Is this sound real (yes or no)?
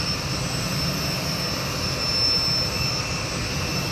yes